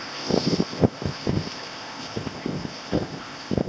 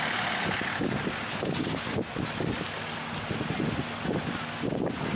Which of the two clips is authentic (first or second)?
second